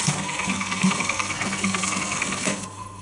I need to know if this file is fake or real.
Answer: fake